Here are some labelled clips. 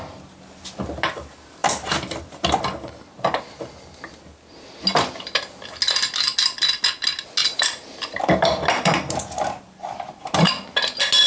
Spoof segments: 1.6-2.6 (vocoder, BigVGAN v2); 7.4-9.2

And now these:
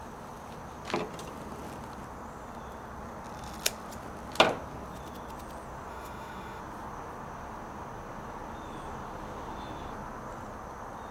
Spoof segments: 5.9-6.6 (autoencoder, DAC-VAE)

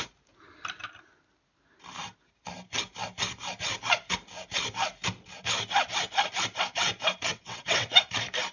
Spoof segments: 7.3-8.0 (vocoder, WaveNeXt)

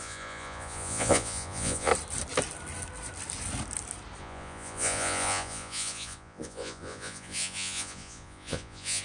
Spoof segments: 0.0-1.9 (vocoder, Vocos); 4.2-9.0

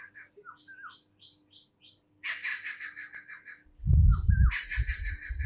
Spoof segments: none